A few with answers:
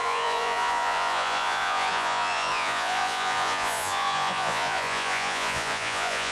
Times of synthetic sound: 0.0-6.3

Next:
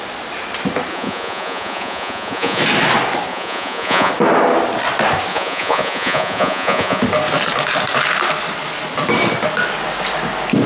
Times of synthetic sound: 0.9-2.6; 3.3-4.1; 5.3-7.0

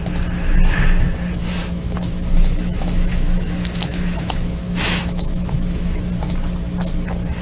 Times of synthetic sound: 1.6-6.0